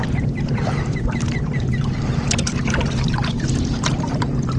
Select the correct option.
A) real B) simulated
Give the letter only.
B